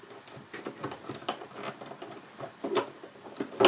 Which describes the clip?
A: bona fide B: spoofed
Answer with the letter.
A